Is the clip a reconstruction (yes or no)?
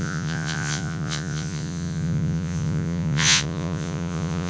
yes